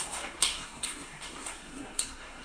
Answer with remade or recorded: remade